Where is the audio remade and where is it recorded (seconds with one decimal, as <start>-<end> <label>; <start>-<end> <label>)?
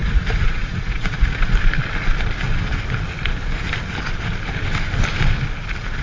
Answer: 0.0-1.4 remade; 1.4-6.0 recorded